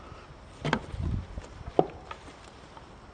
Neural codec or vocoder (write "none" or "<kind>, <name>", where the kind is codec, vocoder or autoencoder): none